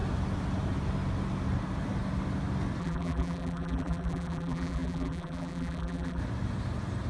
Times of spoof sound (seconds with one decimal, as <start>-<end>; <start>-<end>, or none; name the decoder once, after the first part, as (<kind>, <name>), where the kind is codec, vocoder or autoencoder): 2.8-6.2 (vocoder, BigVGAN v2)